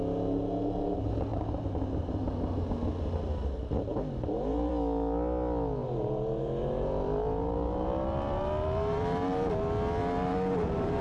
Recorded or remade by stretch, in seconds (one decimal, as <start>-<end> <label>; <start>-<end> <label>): 0.0-1.3 recorded; 1.3-2.7 remade; 2.7-3.9 recorded; 3.9-4.7 remade; 4.7-5.8 recorded; 5.8-9.5 remade; 9.5-10.0 recorded; 10.0-11.0 remade